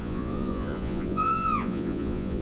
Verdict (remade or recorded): remade